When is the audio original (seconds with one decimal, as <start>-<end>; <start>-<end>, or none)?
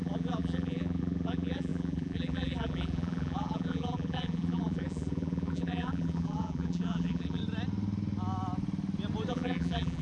7.4-9.3